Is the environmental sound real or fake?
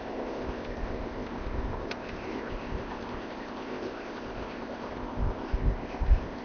fake